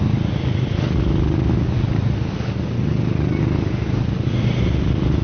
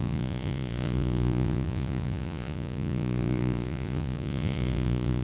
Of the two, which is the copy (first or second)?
second